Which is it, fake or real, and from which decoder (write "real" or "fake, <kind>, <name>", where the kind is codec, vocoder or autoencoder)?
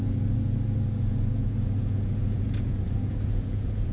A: fake, vocoder, Vocos